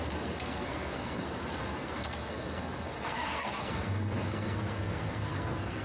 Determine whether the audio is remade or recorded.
remade